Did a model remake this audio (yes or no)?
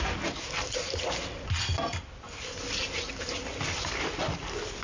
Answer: no